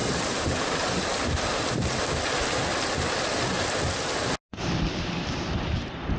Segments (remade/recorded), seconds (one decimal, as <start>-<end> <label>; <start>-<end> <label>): 0.0-0.9 remade; 0.9-6.2 recorded